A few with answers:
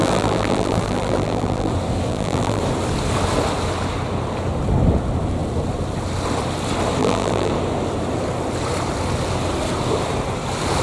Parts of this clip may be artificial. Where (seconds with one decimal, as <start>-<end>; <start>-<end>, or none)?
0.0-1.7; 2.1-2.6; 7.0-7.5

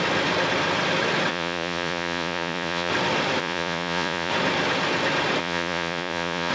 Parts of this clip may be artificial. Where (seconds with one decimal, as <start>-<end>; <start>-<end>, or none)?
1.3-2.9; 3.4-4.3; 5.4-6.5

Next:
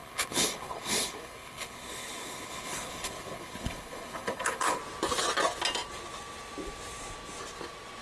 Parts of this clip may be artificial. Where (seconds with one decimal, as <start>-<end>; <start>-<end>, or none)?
0.0-4.8

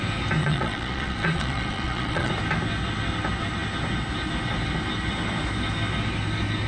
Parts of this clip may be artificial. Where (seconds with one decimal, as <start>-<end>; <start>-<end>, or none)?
0.4-2.3

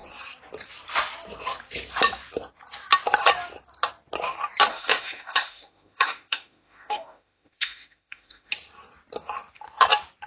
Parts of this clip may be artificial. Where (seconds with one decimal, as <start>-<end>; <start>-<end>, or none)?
4.7-8.5

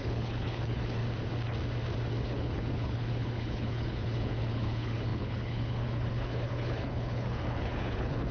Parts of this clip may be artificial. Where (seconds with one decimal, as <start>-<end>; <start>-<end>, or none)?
0.0-1.0; 2.2-8.3